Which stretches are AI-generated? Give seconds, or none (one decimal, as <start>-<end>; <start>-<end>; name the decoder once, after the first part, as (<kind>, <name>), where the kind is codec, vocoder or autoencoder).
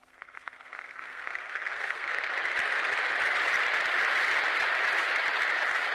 0.0-2.3 (codec, SNAC)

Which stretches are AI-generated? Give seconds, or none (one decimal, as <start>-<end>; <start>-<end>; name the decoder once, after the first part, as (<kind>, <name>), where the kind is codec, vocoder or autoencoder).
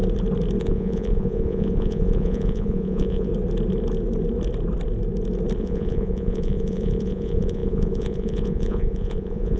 0.6-3.3 (vocoder, Vocos); 5.6-9.6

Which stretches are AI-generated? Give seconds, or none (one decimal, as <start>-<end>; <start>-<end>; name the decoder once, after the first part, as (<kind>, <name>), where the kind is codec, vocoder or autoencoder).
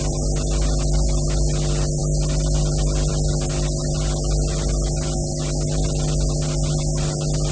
none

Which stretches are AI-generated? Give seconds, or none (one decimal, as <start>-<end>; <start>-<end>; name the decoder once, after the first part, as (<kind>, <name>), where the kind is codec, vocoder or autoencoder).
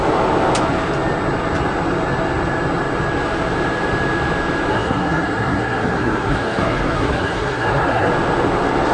4.7-8.1 (codec, SNAC)